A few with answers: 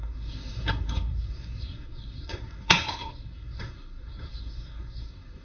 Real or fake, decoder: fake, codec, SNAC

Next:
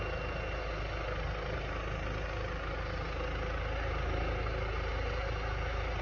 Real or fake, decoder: real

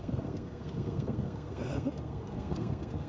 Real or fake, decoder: fake, codec, SNAC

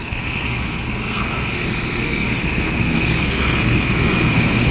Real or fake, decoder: fake, codec, SNAC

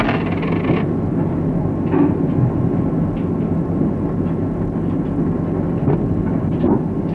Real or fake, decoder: real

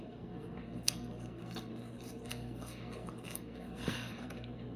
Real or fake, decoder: fake, codec, SNAC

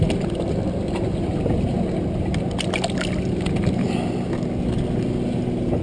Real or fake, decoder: real